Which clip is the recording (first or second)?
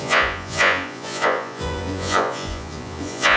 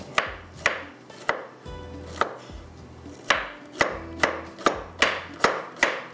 second